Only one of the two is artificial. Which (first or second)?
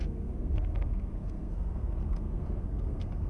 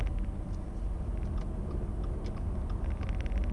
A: first